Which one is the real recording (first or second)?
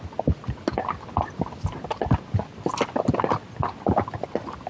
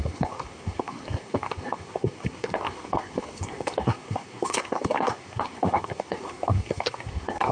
first